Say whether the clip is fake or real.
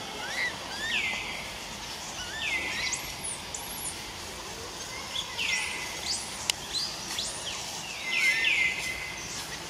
real